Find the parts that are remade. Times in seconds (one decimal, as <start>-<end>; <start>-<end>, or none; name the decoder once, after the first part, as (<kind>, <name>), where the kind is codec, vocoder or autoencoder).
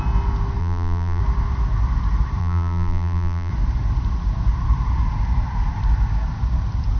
0.6-1.2 (vocoder, BigVGAN v2); 2.4-3.5